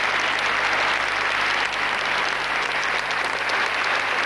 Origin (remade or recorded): recorded